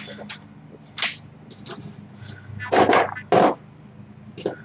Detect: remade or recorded recorded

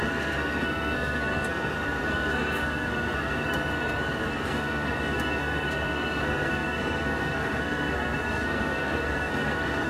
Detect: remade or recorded remade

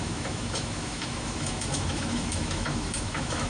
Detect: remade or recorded remade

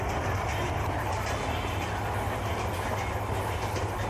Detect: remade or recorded recorded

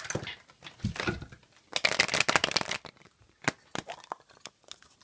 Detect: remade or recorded recorded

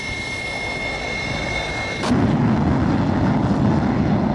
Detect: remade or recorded recorded